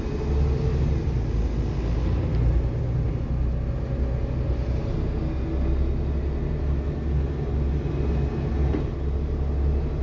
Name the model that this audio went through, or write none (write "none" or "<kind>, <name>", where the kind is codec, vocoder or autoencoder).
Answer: none